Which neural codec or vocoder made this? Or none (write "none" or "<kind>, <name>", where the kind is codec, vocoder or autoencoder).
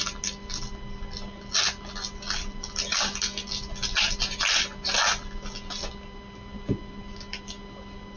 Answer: none